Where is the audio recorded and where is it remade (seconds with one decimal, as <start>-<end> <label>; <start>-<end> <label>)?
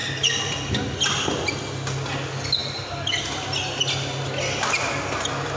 0.0-5.6 recorded